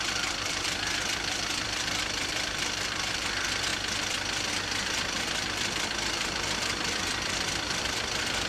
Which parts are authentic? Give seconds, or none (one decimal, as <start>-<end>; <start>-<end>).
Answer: 3.7-4.5